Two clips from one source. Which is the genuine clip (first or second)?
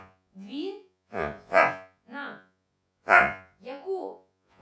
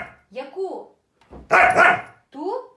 second